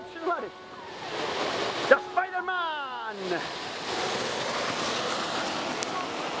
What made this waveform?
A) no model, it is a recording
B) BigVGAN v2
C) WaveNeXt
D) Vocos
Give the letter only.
A